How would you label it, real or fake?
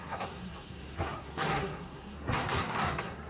fake